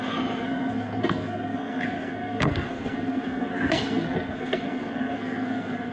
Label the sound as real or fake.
fake